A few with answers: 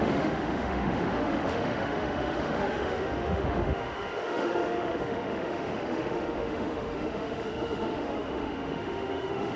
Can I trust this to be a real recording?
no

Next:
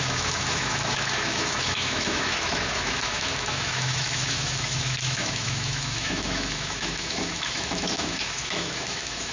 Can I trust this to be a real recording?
no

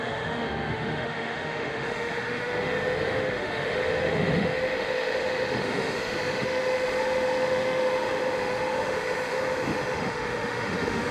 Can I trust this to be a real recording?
no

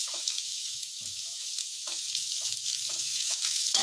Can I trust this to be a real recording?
no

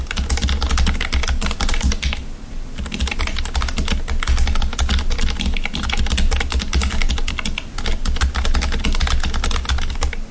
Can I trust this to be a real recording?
yes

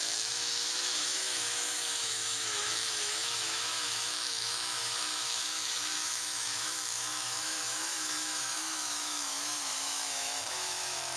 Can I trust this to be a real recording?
no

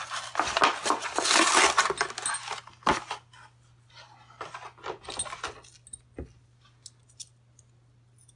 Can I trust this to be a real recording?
yes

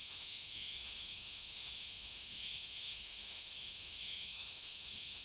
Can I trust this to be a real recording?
no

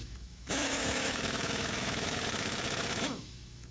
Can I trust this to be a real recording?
no